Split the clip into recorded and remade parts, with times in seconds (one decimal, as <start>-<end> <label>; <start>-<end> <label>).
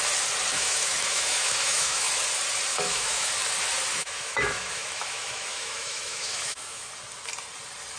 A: 0.0-0.5 recorded; 0.5-2.1 remade; 2.1-2.7 recorded; 2.7-3.3 remade; 3.3-3.9 recorded; 3.9-6.9 remade; 6.9-8.0 recorded